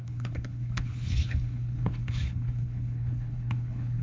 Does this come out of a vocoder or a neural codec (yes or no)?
yes